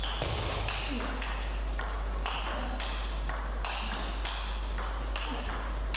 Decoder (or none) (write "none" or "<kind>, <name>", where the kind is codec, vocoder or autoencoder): none